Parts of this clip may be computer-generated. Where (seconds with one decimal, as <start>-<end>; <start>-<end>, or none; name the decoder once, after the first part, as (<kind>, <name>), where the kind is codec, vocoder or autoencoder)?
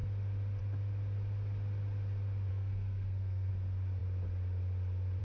2.5-3.5 (codec, SNAC)